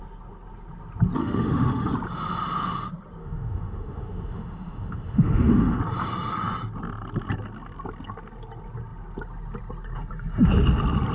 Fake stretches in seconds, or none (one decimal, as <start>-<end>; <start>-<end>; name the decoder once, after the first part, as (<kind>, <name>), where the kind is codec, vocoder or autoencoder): 1.2-1.9 (autoencoder, DAC-VAE); 3.2-5.8